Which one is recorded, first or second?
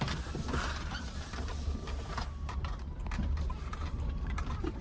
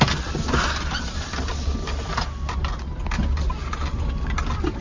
second